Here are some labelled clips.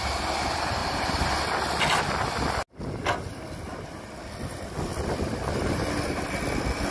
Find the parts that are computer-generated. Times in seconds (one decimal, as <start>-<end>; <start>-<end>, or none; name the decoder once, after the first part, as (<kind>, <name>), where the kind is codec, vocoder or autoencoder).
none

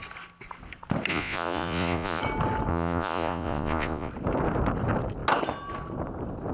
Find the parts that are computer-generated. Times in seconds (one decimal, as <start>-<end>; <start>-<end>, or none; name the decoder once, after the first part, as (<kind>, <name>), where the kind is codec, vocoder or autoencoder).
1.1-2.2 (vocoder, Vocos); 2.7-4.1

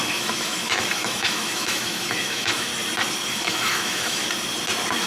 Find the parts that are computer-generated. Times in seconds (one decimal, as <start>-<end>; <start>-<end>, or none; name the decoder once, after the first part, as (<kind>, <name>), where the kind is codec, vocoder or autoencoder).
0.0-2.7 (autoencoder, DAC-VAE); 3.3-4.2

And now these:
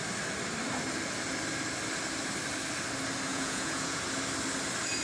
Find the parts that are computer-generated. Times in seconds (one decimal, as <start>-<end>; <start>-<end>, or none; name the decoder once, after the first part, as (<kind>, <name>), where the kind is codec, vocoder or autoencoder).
3.3-4.0 (vocoder, Vocos)

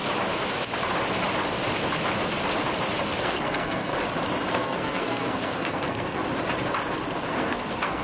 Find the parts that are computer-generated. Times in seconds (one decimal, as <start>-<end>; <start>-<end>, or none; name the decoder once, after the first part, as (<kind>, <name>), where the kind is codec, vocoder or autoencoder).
3.2-3.9 (codec, SNAC); 4.5-6.2; 7.3-8.0